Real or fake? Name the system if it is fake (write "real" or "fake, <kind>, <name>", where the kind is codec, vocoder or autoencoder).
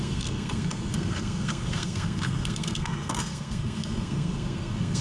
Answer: fake, codec, SNAC